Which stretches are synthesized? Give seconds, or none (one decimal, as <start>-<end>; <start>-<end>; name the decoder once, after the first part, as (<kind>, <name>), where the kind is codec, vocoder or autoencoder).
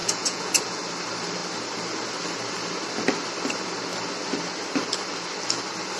0.0-0.6 (vocoder, Vocos)